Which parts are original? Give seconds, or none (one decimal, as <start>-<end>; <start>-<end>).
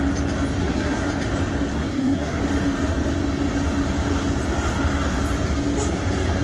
0.0-0.6; 1.1-1.7; 2.4-6.4